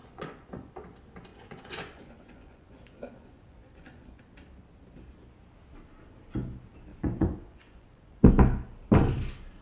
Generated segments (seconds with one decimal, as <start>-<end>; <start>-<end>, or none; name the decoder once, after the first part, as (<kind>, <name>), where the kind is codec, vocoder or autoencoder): 0.0-0.7 (vocoder, Vocos); 1.3-4.2; 6.9-8.3

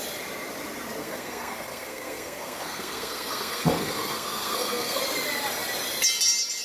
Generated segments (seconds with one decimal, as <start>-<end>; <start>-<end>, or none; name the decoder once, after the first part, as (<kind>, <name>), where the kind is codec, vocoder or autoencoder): 1.0-5.0 (codec, SNAC)

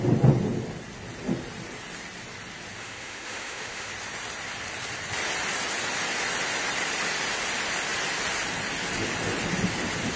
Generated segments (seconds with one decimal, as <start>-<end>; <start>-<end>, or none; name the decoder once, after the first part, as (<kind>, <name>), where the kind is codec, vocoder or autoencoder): 2.8-3.9 (autoencoder, DAC-VAE)

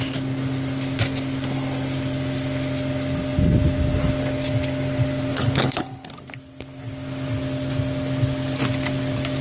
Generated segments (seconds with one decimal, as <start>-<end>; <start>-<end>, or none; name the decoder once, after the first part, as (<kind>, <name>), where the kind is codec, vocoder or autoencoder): 5.3-6.2 (codec, HILCodec)

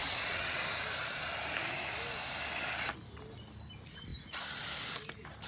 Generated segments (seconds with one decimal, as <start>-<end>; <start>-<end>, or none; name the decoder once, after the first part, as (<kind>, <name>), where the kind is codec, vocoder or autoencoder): 0.0-0.6 (vocoder, WaveNeXt)